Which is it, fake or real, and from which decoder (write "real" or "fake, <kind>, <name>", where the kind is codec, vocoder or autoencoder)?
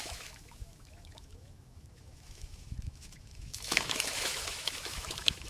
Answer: fake, autoencoder, DAC-VAE